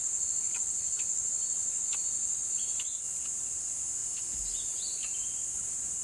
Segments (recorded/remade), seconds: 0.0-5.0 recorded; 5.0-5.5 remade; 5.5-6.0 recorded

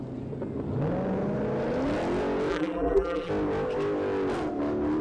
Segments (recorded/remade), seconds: 0.0-2.5 recorded; 2.5-3.3 remade; 3.3-5.0 recorded